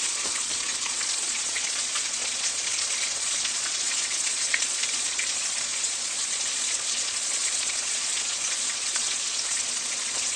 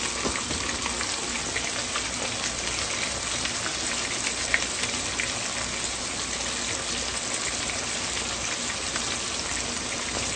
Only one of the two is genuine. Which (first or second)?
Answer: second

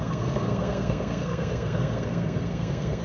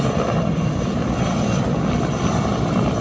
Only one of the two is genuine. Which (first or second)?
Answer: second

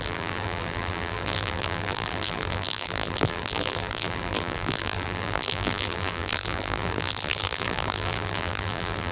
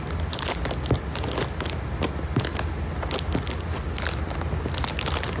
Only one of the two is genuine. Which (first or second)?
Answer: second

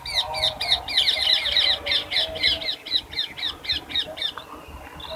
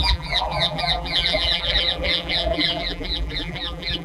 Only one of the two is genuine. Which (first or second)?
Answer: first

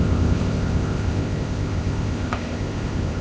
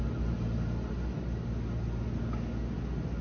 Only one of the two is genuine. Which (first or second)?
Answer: second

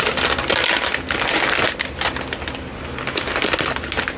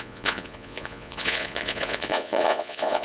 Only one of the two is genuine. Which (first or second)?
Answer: first